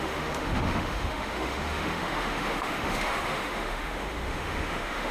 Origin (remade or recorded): remade